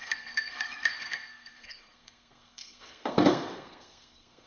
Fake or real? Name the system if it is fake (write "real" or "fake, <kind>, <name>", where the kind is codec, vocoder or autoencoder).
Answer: fake, codec, SNAC